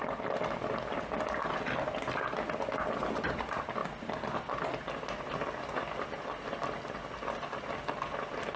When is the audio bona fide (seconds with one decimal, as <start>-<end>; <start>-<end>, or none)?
0.0-8.6

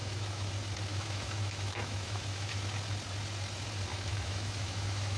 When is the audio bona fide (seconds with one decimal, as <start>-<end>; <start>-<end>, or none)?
0.5-0.9; 2.6-3.9

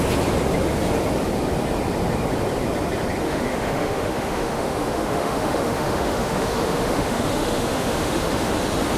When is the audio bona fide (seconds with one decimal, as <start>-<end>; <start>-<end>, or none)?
0.0-3.2; 8.5-9.0

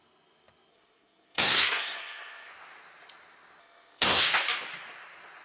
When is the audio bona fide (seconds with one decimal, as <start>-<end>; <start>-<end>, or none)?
0.0-0.7; 2.5-3.6; 4.2-5.4